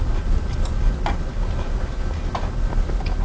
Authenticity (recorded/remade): recorded